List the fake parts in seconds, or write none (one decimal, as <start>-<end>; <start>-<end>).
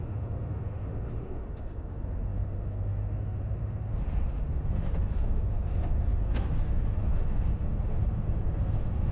0.0-9.1